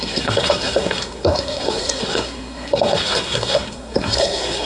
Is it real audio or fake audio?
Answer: fake